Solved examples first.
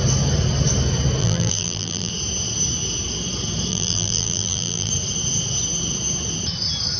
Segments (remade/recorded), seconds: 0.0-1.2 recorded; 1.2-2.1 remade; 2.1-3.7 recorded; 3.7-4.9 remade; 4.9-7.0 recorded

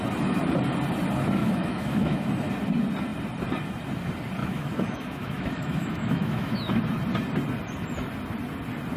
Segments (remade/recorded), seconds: 0.0-1.4 recorded; 1.4-2.3 remade; 2.3-4.4 recorded; 4.4-6.8 remade; 6.8-9.0 recorded

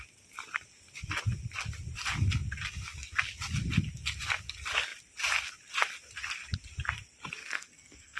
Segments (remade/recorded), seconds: 0.0-7.4 recorded; 7.4-8.2 remade

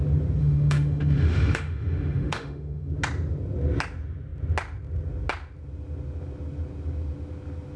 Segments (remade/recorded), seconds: 0.0-0.4 recorded; 0.4-2.9 remade; 2.9-7.8 recorded